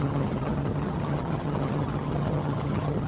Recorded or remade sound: remade